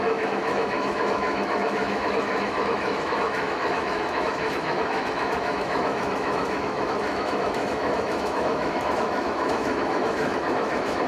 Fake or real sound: fake